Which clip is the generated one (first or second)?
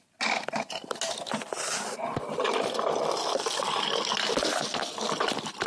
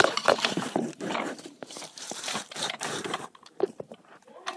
second